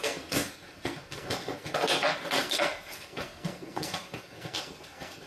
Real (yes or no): no